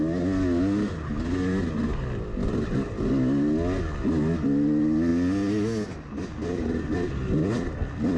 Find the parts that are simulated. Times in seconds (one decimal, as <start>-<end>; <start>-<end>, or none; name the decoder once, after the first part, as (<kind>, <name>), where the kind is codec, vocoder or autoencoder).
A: none